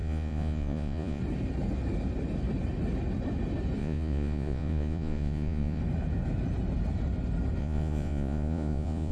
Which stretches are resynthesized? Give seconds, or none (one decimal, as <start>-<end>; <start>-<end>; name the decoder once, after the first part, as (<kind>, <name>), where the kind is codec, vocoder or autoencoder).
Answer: 0.0-1.2 (vocoder, Vocos); 3.8-5.8; 7.6-9.1